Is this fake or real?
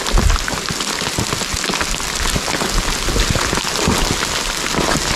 real